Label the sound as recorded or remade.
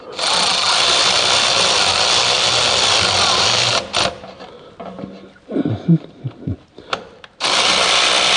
recorded